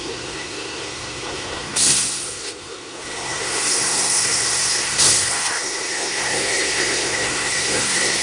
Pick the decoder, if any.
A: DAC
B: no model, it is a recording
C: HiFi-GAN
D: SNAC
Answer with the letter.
D